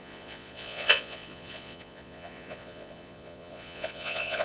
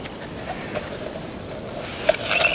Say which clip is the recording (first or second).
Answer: second